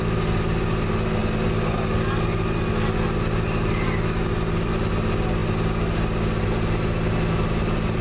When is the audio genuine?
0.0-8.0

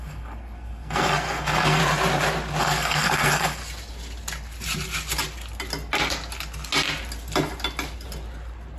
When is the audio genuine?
1.8-2.6; 3.6-8.8

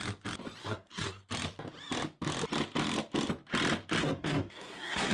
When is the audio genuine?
0.0-0.6; 1.3-4.0

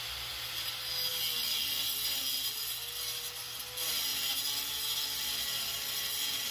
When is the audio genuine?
0.0-6.5